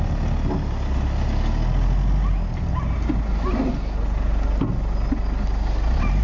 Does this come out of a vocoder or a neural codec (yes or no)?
no